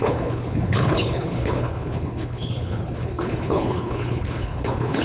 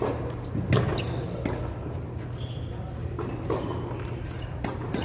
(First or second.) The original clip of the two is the second